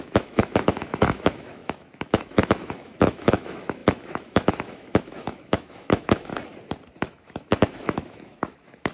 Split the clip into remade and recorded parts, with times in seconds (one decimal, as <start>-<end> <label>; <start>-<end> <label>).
0.0-6.3 remade; 6.3-7.0 recorded; 7.0-8.9 remade